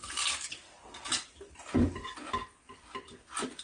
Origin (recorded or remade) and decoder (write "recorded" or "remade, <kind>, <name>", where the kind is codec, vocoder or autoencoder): recorded